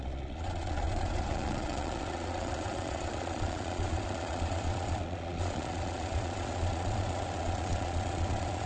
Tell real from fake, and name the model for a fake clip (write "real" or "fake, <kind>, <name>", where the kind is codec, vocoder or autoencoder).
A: fake, vocoder, Vocos